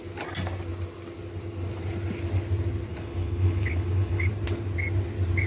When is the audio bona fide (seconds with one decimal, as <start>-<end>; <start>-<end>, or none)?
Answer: 0.0-2.9; 4.3-5.5